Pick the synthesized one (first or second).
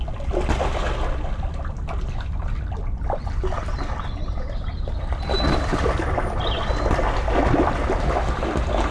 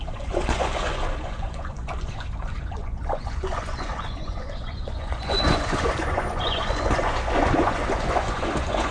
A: second